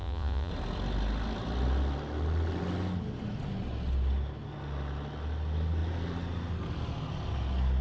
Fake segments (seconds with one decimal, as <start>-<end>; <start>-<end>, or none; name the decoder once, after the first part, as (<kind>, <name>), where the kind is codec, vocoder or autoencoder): 0.0-0.5 (vocoder, Vocos)